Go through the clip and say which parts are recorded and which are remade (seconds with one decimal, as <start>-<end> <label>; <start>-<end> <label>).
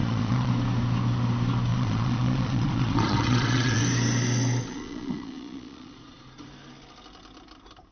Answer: 0.0-0.5 remade; 0.5-1.7 recorded; 1.7-3.8 remade; 3.8-4.7 recorded; 4.7-6.4 remade; 6.4-7.9 recorded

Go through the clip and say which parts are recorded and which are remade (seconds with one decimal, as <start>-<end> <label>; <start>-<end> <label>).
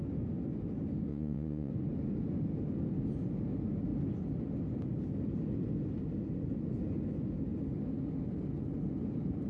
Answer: 0.0-1.1 recorded; 1.1-1.7 remade; 1.7-9.5 recorded